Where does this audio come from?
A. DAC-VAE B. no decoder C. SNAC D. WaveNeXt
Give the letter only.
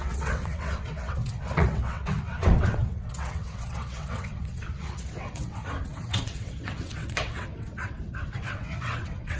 D